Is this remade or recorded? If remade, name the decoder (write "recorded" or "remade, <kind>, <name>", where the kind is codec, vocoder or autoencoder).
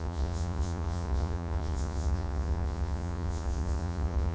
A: remade, vocoder, Vocos